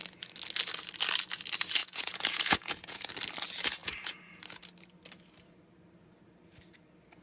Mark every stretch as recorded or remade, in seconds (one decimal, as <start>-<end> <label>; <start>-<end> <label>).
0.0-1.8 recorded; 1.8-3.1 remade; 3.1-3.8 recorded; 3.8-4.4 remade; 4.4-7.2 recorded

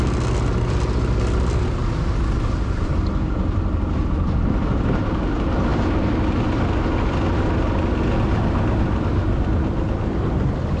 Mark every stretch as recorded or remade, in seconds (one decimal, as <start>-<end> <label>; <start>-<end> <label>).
0.0-10.8 recorded

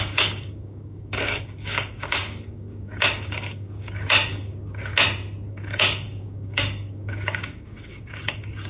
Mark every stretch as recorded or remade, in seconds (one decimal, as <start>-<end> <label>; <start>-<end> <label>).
0.0-4.9 remade; 4.9-5.5 recorded; 5.5-8.7 remade

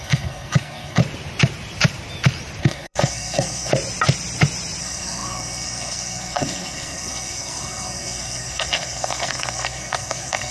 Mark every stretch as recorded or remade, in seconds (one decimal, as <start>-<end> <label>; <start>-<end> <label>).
0.0-1.0 remade; 1.0-2.6 recorded; 2.6-3.7 remade; 3.7-4.8 recorded; 4.8-10.5 remade